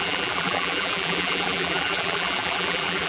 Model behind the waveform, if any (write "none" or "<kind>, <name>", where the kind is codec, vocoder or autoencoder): vocoder, BigVGAN v2